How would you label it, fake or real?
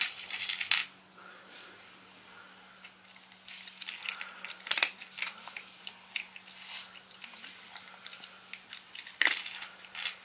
real